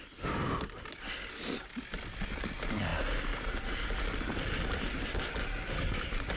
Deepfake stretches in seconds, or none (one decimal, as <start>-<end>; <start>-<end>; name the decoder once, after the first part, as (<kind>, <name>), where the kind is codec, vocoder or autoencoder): none